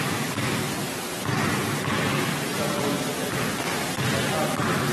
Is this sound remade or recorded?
recorded